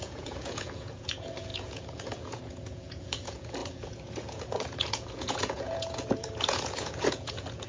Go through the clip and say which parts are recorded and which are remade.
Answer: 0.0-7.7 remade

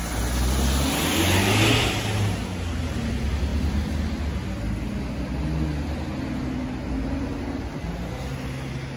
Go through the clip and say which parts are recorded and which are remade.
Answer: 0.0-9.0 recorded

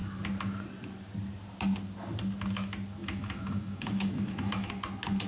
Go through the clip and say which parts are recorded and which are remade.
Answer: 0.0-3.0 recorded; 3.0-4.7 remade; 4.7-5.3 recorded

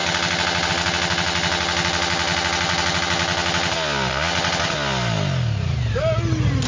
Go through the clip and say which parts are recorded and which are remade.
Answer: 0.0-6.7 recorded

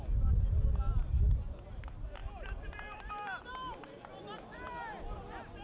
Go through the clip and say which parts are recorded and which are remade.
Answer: 0.0-5.6 recorded